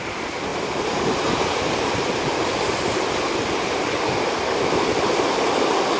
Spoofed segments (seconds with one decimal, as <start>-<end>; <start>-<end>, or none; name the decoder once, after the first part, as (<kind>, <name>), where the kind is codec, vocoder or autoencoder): none